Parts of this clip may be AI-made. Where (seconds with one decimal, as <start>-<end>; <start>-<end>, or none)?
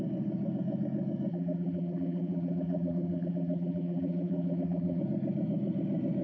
1.3-5.0